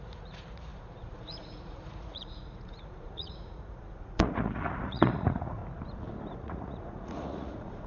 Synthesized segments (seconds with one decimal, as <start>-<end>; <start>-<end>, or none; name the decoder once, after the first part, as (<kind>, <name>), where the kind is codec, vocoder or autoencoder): 0.0-5.6 (vocoder, Vocos); 6.3-7.9

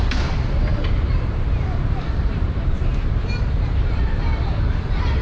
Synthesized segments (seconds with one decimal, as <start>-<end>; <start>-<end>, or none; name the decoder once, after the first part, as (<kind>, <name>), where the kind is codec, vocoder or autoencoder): 0.0-5.2 (vocoder, BigVGAN v2)

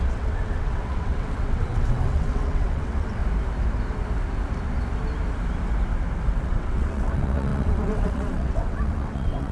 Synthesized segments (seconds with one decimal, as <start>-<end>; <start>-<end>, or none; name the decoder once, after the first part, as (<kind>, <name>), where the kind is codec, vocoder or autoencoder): 0.0-3.2 (vocoder, WaveNeXt); 6.3-9.5

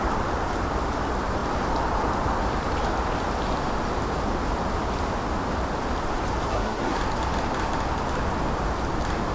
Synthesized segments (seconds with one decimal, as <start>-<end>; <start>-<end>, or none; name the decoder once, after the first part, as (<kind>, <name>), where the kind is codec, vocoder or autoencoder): 6.5-7.0 (codec, SNAC)

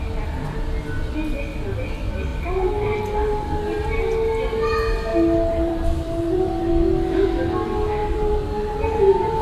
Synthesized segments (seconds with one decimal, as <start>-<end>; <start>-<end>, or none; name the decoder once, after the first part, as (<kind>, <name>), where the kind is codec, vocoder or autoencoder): 2.3-4.0 (vocoder, BigVGAN v2); 5.1-6.7; 8.0-9.4

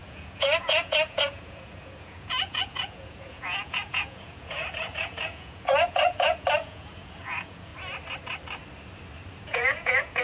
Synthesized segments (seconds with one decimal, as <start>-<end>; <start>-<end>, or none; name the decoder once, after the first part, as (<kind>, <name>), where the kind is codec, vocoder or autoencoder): 0.0-7.7 (vocoder, Vocos); 9.4-10.2

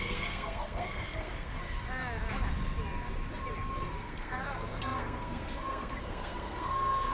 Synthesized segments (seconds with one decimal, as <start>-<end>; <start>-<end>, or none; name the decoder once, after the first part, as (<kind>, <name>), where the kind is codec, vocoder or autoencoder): 0.0-1.6 (codec, SNAC); 3.8-7.1